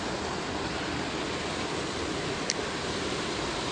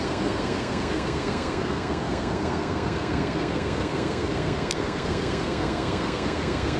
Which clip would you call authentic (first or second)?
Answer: first